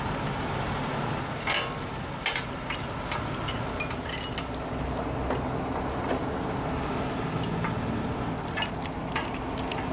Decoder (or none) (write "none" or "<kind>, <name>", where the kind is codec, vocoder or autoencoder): none